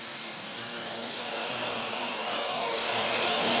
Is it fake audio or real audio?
fake